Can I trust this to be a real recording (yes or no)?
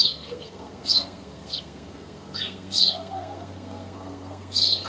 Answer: no